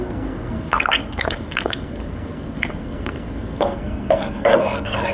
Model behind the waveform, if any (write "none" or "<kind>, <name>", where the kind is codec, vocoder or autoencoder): codec, SNAC